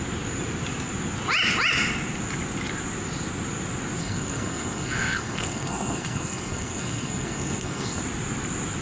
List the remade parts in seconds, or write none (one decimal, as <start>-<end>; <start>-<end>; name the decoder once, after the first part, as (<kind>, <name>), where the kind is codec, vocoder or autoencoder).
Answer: 4.0-8.0 (codec, SNAC)